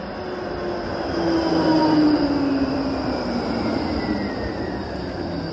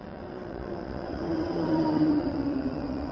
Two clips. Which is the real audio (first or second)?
first